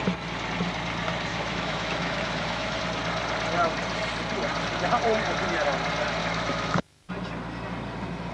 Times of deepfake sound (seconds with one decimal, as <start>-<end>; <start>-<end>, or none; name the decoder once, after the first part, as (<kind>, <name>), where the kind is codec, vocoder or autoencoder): 1.3-2.8 (autoencoder, DAC-VAE); 6.2-7.1